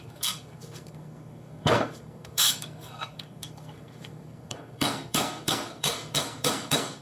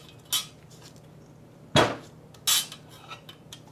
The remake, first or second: first